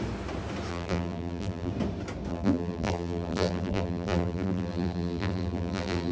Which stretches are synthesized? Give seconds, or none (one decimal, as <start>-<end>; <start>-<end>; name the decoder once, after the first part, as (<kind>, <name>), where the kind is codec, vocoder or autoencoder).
0.7-1.7 (vocoder, BigVGAN v2); 2.3-6.1